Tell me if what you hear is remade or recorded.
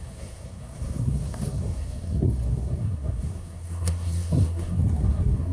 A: remade